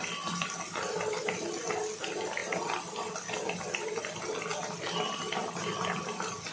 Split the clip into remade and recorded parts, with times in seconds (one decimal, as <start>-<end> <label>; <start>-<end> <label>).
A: 0.0-6.5 recorded